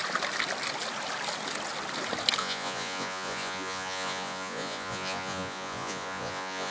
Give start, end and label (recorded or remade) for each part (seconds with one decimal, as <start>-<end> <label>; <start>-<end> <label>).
0.0-2.4 recorded; 2.4-6.7 remade